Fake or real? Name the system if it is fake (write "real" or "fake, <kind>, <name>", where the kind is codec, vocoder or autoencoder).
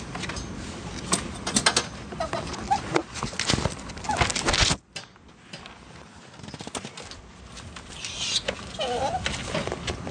real